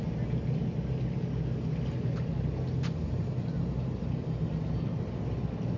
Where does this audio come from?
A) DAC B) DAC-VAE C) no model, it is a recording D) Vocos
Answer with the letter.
C